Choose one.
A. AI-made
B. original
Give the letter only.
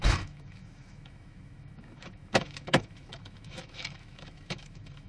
A